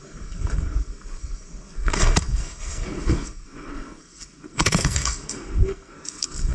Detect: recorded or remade remade